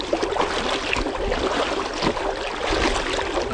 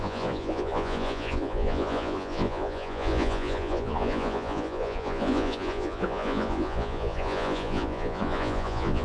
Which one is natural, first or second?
first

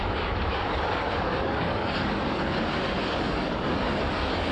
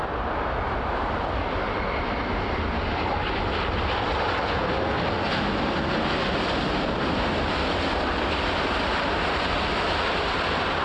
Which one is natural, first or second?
second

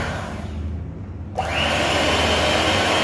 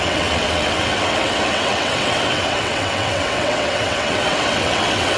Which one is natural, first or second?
first